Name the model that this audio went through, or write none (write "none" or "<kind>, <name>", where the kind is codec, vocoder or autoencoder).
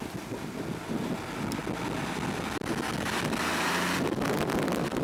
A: none